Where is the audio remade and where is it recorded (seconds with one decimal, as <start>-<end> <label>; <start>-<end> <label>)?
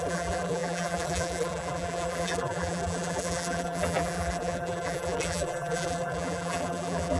0.0-7.2 remade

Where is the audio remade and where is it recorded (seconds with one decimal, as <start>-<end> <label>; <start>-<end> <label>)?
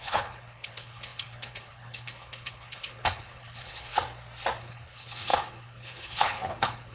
0.0-3.9 remade; 3.9-4.6 recorded; 4.6-6.9 remade